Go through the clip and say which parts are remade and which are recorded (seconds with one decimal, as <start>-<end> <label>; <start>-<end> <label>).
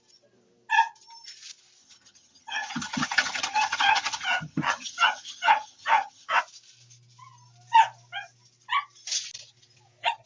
0.0-1.8 recorded; 1.8-6.4 remade; 6.4-10.3 recorded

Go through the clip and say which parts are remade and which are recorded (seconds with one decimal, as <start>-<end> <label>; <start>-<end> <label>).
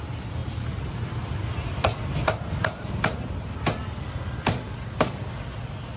0.0-6.0 recorded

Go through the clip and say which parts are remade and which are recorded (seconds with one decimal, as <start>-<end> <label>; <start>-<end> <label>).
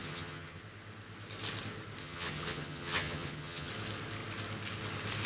0.0-0.6 remade; 0.6-2.0 recorded; 2.0-3.7 remade; 3.7-5.3 recorded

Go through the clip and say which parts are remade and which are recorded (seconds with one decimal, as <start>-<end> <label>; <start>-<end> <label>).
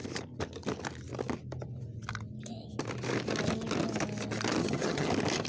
0.0-4.6 recorded; 4.6-5.1 remade; 5.1-5.5 recorded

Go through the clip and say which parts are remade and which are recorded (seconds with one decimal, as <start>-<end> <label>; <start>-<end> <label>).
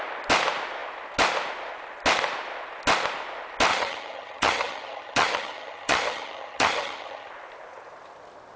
0.0-3.7 recorded; 3.7-7.3 remade; 7.3-8.6 recorded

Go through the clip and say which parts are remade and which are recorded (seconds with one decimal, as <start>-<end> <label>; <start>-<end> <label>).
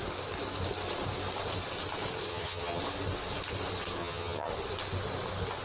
0.0-2.3 recorded; 2.3-2.8 remade; 2.8-4.0 recorded; 4.0-4.5 remade; 4.5-5.6 recorded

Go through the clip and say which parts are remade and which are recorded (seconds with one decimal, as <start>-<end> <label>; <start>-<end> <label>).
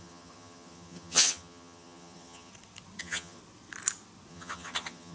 0.0-2.5 remade; 2.5-3.0 recorded; 3.0-3.4 remade; 3.4-4.3 recorded; 4.3-5.1 remade